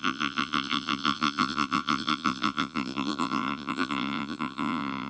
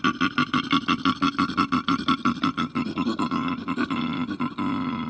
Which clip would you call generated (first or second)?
first